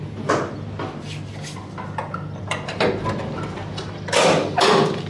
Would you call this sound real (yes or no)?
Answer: yes